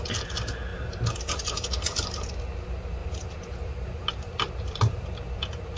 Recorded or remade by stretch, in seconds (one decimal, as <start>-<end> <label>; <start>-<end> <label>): 0.0-3.0 recorded; 3.0-5.1 remade; 5.1-5.8 recorded

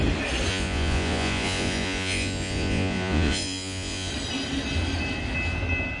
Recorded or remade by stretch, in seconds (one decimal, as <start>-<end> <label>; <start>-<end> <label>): 0.0-0.5 recorded; 0.5-4.1 remade; 4.1-6.0 recorded